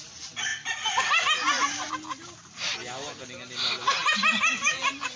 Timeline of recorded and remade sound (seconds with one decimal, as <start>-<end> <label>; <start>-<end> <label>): 0.0-5.2 recorded